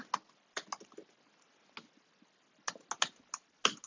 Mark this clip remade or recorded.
recorded